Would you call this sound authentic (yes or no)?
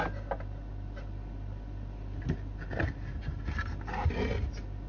yes